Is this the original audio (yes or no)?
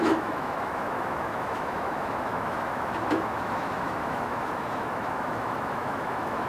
no